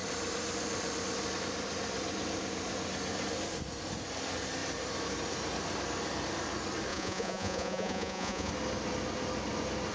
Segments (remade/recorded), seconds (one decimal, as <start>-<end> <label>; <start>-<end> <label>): 0.0-6.9 recorded; 6.9-8.5 remade; 8.5-9.9 recorded